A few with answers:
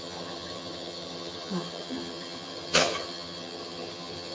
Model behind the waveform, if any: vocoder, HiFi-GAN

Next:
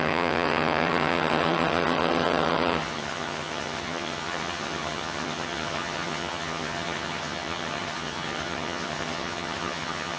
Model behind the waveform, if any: vocoder, HiFi-GAN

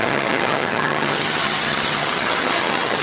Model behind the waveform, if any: vocoder, HiFi-GAN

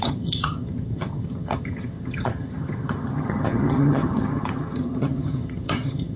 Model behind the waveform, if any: vocoder, HiFi-GAN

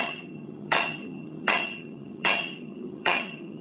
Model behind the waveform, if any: vocoder, HiFi-GAN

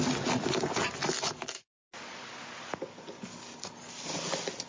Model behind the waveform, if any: none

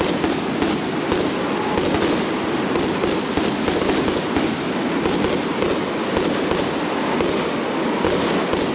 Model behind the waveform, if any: none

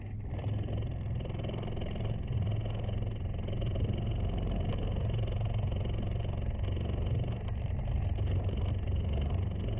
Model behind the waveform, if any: none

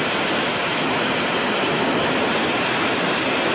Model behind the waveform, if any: none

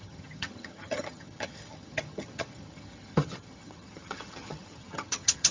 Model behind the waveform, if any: vocoder, HiFi-GAN